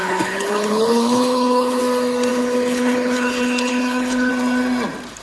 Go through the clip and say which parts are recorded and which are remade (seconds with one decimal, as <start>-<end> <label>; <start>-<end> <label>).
0.0-1.8 remade; 1.8-2.3 recorded; 2.3-4.3 remade; 4.3-5.2 recorded